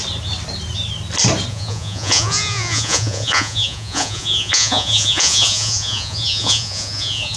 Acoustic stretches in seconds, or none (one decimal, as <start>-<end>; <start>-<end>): 0.0-1.5